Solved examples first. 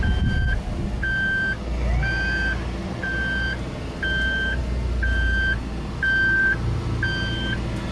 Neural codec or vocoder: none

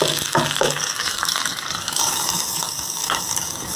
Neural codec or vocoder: codec, DAC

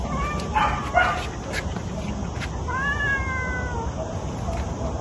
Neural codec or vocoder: none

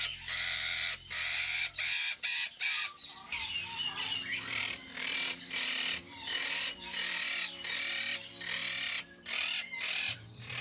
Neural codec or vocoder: vocoder, BigVGAN v2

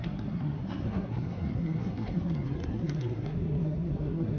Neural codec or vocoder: codec, SNAC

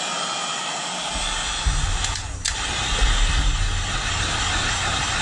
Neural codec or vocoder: none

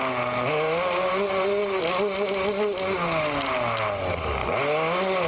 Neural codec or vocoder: none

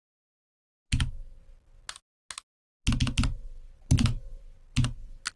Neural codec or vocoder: none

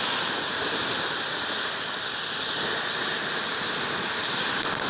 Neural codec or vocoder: none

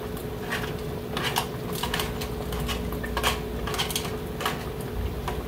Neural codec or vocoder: none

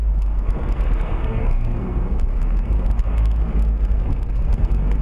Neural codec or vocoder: codec, SNAC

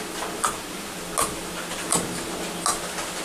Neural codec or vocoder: none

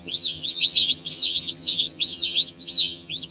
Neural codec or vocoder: vocoder, HiFi-GAN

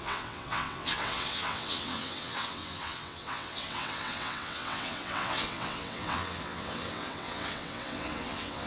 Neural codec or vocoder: vocoder, WaveNeXt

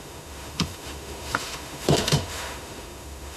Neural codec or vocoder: autoencoder, DAC-VAE